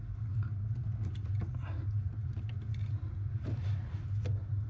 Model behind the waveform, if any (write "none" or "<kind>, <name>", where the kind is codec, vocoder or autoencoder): none